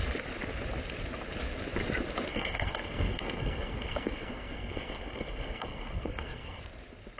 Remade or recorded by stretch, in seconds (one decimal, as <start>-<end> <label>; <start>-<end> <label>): 0.0-2.3 recorded; 2.3-6.6 remade; 6.6-7.2 recorded